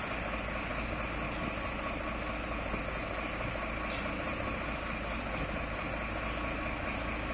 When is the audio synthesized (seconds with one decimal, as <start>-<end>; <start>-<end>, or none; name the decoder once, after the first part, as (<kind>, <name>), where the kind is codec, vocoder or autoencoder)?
none